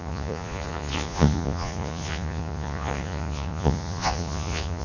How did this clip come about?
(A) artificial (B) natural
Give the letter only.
A